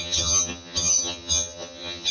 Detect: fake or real fake